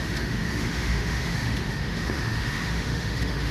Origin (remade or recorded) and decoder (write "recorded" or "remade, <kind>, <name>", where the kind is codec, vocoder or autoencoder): remade, autoencoder, DAC-VAE